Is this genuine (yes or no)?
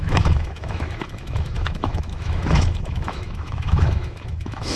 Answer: no